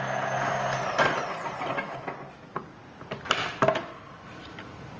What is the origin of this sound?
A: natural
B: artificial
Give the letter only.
A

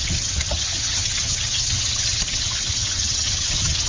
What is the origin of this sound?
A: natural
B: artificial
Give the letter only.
B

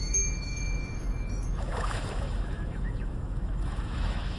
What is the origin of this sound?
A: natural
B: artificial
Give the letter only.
B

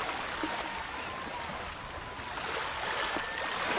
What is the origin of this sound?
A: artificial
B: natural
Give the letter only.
B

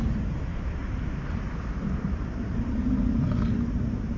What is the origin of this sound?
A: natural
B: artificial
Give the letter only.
B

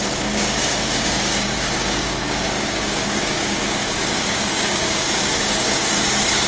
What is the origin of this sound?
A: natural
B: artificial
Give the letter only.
B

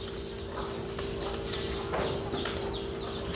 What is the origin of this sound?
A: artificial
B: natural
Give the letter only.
B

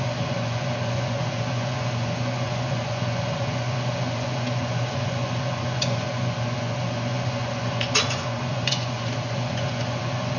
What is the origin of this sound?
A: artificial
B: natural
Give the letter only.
A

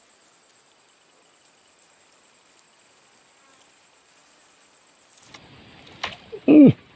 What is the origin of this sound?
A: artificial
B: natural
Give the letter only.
B